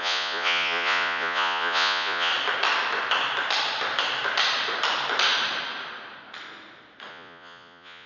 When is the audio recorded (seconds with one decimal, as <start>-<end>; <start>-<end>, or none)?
2.3-7.1